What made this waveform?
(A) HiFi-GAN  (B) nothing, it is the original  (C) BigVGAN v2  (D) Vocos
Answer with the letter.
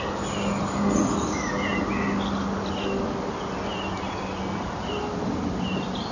B